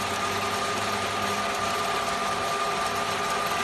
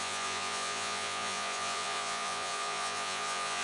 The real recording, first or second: first